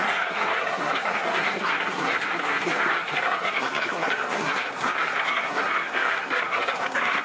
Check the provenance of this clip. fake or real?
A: fake